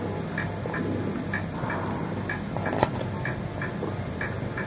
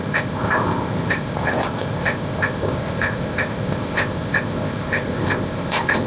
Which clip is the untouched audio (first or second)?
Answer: first